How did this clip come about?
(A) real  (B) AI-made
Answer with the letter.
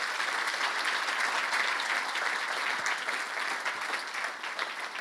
A